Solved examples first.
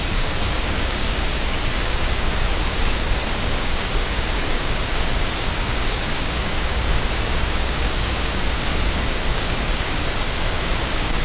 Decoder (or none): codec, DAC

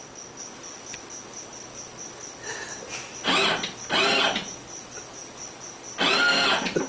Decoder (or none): none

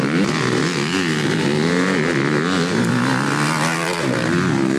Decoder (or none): none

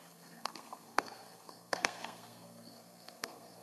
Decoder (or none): codec, SNAC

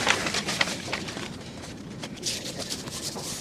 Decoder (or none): vocoder, BigVGAN v2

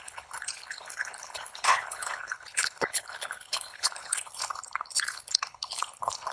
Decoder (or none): codec, HILCodec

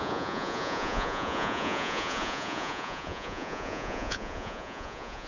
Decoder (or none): vocoder, Vocos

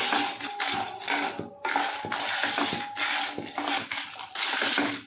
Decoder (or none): none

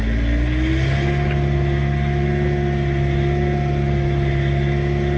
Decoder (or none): none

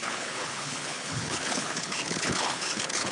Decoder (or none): codec, HILCodec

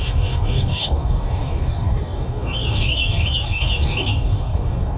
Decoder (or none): codec, DAC